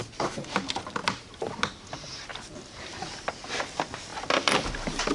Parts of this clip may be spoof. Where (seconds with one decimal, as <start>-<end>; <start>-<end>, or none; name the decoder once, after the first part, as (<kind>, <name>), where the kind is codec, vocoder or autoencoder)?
1.0-1.7 (vocoder, BigVGAN v2); 2.3-3.6; 4.1-5.1